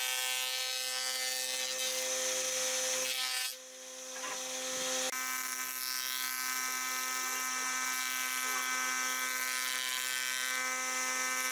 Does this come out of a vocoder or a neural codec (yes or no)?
no